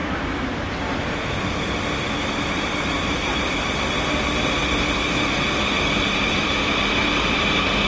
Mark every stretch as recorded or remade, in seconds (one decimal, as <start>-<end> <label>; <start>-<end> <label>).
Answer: 0.0-3.6 remade; 3.6-7.9 recorded

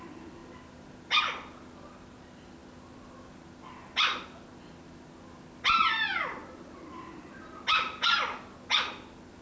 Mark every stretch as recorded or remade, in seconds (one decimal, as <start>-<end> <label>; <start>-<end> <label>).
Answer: 0.0-9.4 recorded

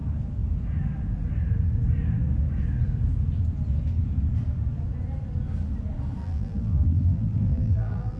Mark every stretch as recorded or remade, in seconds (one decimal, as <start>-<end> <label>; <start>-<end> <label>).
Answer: 0.0-6.2 recorded; 6.2-8.2 remade

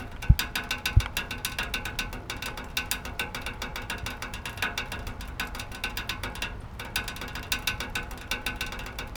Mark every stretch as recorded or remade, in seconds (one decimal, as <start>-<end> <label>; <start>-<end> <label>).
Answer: 0.0-9.2 recorded

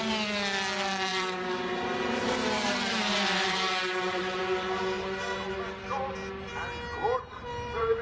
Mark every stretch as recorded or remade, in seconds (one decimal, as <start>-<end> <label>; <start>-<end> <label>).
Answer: 0.0-1.1 recorded; 1.1-4.4 remade; 4.4-7.0 recorded; 7.0-8.0 remade

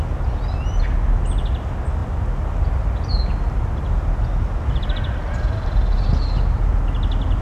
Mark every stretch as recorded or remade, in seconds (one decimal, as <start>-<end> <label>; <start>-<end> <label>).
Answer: 0.0-7.4 recorded

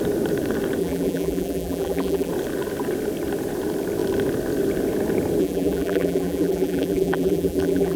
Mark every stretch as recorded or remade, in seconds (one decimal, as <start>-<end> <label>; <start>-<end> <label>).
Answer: 0.0-0.8 recorded; 0.8-2.3 remade; 2.3-5.4 recorded; 5.4-8.0 remade